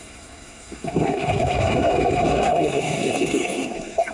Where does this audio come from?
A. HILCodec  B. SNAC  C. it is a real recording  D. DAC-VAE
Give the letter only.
B